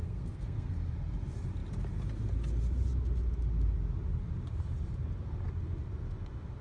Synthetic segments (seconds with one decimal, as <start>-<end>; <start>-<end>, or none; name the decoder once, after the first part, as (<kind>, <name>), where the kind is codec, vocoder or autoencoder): 0.0-0.9 (codec, SNAC)

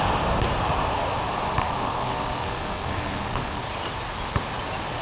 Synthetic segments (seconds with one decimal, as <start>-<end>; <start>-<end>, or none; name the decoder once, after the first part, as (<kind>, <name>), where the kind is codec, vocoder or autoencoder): 1.6-3.6 (codec, SNAC)

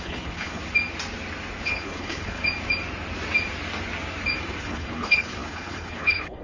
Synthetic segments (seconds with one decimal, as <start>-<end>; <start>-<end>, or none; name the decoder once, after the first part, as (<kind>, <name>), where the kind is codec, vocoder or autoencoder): 0.0-0.6 (codec, HILCodec); 1.6-2.4; 4.6-6.4

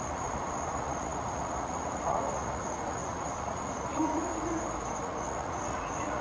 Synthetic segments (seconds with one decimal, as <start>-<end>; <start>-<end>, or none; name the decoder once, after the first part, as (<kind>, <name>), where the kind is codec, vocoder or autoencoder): 0.0-4.3 (vocoder, Vocos); 5.0-6.2

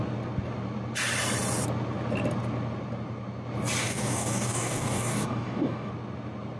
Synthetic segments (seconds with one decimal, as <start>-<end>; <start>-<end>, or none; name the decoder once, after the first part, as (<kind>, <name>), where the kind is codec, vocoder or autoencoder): 3.8-5.9 (codec, DAC)

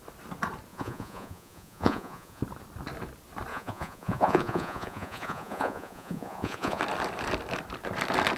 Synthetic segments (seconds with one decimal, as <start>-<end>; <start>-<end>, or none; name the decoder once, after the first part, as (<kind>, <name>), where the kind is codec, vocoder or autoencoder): 0.7-2.4 (vocoder, Vocos); 3.5-6.8